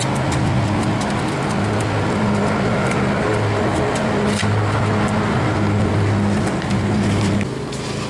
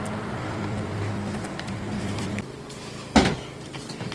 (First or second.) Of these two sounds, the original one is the first